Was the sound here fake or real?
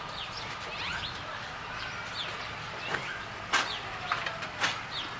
real